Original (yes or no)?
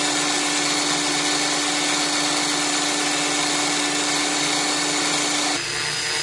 yes